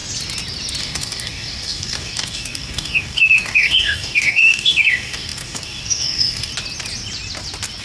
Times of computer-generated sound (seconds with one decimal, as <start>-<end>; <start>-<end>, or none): 0.8-6.5

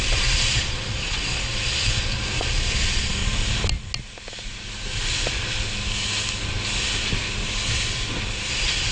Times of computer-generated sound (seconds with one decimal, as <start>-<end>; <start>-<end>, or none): 0.0-3.2; 8.5-8.9